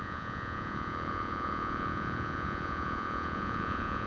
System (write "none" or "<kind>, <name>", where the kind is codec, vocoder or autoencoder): vocoder, Vocos